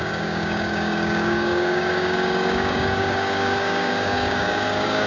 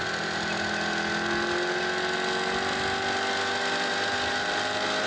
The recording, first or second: second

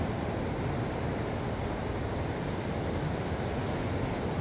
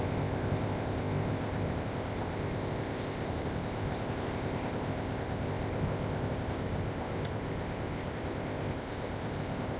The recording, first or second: first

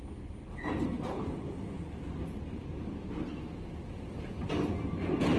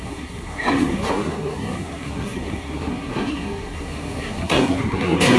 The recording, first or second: first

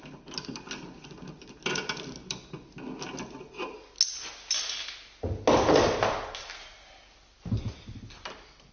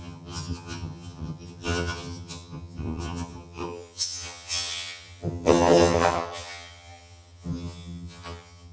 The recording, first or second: first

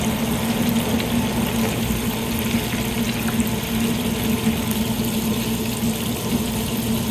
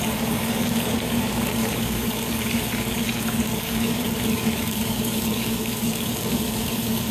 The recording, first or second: first